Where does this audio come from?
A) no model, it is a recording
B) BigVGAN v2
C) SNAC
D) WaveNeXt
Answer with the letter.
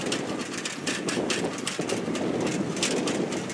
A